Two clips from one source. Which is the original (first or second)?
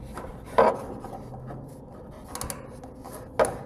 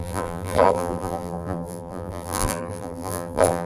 first